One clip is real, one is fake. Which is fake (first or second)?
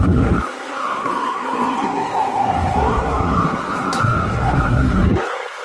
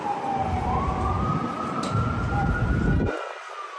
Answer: first